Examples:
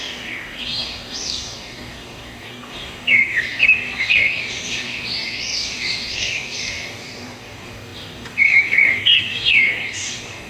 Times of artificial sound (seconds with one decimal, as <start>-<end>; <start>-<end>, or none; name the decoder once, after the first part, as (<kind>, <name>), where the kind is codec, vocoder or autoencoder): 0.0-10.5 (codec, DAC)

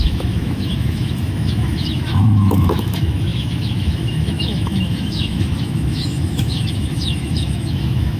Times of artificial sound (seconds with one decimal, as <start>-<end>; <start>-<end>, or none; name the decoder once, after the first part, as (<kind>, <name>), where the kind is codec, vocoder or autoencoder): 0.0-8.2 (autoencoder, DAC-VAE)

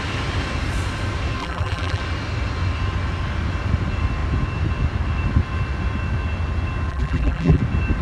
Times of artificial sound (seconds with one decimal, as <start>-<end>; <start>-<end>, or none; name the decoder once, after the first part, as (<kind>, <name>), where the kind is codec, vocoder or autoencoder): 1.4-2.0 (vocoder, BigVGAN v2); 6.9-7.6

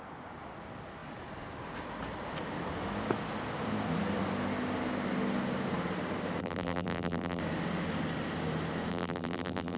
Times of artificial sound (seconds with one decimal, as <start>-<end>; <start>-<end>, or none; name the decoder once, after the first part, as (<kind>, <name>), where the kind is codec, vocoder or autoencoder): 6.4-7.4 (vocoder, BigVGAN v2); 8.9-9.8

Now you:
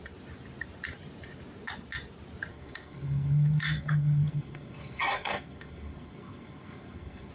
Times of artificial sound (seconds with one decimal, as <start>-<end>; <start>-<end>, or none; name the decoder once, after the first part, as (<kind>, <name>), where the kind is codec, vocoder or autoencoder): 2.5-7.3 (codec, SNAC)

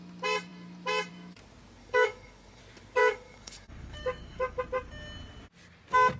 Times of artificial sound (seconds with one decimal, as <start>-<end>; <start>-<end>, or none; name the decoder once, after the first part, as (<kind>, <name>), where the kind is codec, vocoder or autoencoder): 1.8-2.6 (codec, DAC); 3.0-4.6